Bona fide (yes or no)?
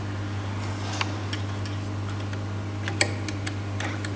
yes